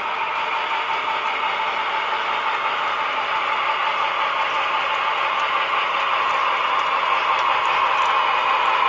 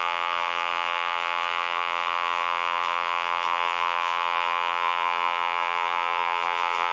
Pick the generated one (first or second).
second